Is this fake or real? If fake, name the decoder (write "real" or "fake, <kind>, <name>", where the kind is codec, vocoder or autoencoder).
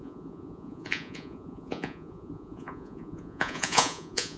fake, vocoder, Vocos